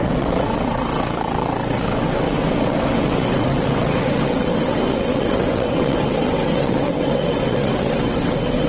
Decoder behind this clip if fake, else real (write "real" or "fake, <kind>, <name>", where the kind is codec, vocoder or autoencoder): fake, vocoder, WaveNeXt